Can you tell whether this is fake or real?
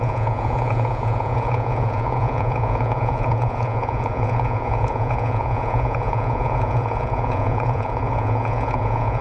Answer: fake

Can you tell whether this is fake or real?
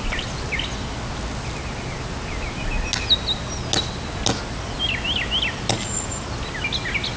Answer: real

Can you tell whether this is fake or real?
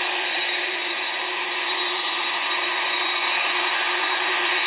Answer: fake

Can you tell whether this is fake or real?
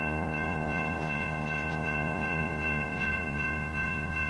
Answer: fake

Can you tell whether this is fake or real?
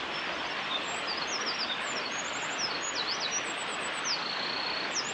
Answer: real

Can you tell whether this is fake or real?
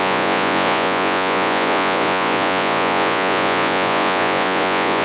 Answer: fake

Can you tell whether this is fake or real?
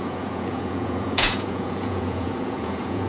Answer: fake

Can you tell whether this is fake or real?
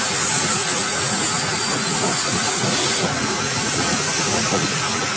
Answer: fake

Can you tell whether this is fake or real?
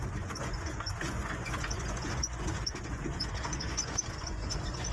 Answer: fake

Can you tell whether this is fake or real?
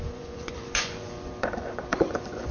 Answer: fake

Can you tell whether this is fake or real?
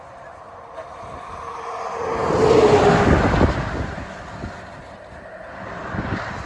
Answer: real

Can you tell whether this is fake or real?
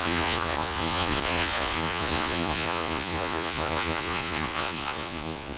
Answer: fake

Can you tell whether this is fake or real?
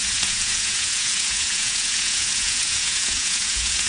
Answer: fake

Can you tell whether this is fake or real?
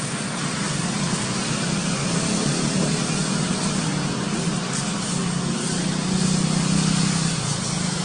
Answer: real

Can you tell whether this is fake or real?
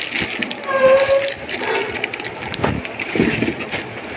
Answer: real